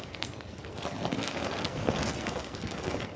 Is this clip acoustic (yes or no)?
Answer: no